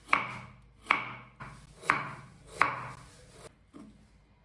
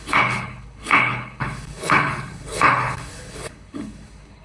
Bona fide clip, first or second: first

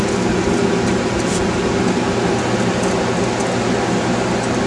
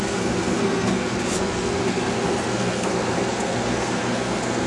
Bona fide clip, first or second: first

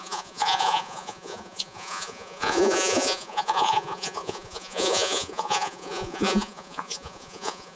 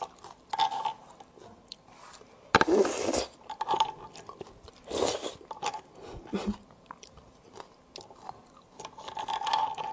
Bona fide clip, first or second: second